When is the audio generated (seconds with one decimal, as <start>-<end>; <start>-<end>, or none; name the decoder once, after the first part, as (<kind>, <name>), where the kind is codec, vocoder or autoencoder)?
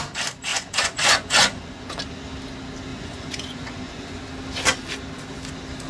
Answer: 0.5-2.0 (vocoder, Vocos); 2.9-4.2